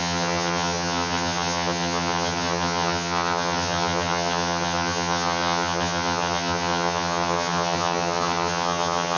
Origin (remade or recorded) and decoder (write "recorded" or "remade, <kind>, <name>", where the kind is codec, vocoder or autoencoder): remade, vocoder, HiFi-GAN